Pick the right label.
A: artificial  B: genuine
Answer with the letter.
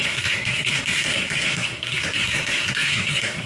A